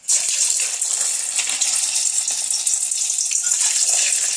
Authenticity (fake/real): real